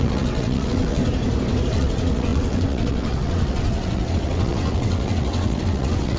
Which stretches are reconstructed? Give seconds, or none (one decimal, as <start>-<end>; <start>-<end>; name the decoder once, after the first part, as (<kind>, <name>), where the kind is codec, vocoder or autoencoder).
0.0-1.0 (vocoder, WaveNeXt); 1.7-6.2